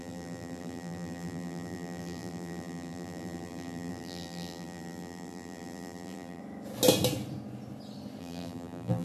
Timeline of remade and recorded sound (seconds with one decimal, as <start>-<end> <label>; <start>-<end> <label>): 0.0-6.4 remade; 6.4-8.2 recorded; 8.2-9.0 remade

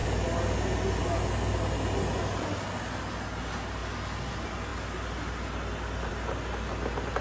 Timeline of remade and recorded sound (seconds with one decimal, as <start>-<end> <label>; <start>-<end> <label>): 0.0-7.2 recorded

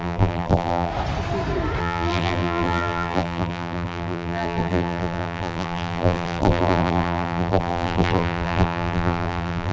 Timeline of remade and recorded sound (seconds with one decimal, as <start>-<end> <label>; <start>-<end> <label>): 0.0-0.9 remade; 0.9-1.8 recorded; 1.8-9.7 remade

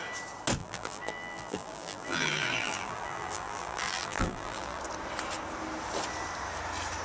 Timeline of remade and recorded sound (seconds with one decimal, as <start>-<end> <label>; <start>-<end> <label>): 0.0-0.6 recorded; 0.6-4.8 remade; 4.8-7.0 recorded

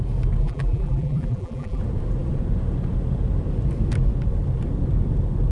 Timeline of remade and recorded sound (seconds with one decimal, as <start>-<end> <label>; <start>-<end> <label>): 0.0-0.4 recorded; 0.4-1.8 remade; 1.8-5.5 recorded

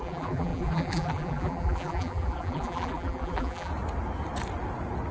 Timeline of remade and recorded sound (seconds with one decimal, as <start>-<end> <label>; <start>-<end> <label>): 0.0-3.7 remade; 3.7-5.1 recorded